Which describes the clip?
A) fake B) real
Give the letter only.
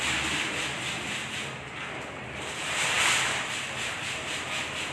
A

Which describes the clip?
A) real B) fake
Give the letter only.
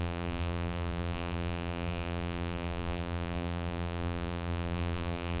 B